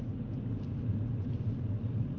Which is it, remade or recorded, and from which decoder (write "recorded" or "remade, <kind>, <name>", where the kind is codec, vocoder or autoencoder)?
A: recorded